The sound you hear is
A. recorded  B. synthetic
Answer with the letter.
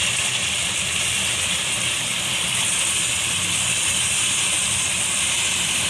A